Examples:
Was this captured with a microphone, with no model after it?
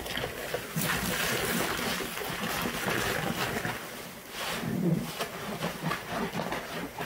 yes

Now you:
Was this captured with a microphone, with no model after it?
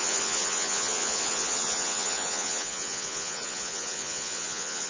no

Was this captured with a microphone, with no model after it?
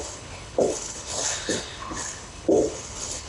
no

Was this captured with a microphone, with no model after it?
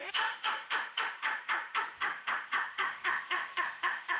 no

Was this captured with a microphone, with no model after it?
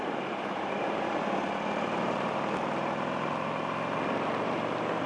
yes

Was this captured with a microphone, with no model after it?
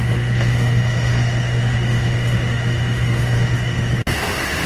no